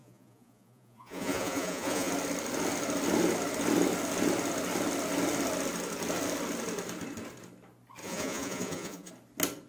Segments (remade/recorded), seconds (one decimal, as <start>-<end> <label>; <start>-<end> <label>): 0.0-2.1 remade; 2.1-8.0 recorded; 8.0-9.1 remade; 9.1-9.7 recorded